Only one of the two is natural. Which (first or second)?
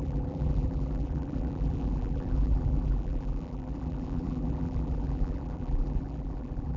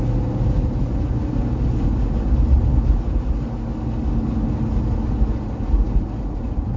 second